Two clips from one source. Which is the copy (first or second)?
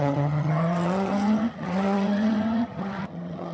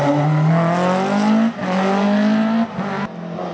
first